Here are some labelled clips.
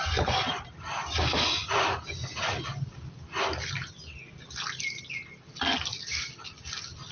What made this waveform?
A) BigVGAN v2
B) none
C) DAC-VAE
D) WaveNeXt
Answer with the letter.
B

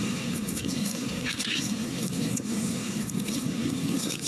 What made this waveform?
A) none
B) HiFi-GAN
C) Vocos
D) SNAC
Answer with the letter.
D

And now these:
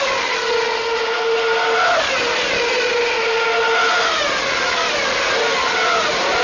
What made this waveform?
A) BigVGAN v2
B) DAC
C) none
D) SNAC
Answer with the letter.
C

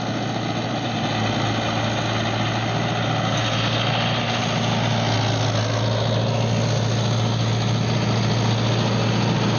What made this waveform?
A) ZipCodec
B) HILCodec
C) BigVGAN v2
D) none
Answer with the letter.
D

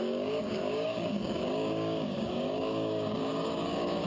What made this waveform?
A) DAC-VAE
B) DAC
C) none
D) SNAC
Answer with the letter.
B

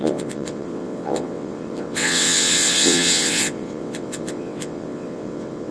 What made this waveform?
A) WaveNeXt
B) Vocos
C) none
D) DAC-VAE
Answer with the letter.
A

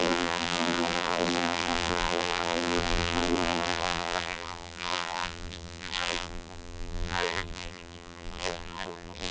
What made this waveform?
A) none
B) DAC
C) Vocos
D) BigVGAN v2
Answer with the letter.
D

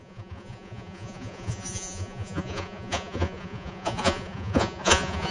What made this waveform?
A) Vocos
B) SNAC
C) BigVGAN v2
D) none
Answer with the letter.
A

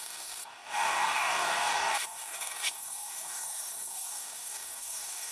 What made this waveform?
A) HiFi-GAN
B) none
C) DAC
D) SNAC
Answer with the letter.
C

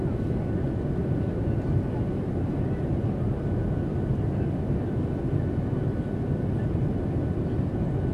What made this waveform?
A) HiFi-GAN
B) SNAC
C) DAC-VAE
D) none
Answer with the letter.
D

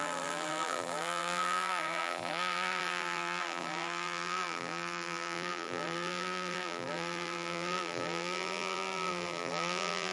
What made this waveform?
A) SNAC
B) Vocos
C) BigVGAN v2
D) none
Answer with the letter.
C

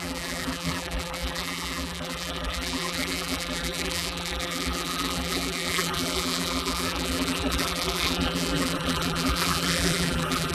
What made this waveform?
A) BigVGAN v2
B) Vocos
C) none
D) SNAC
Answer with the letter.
A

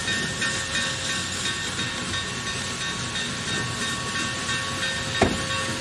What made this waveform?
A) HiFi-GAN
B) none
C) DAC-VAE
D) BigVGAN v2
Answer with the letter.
B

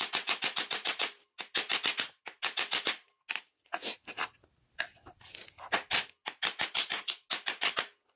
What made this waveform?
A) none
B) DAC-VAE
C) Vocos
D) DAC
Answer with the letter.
A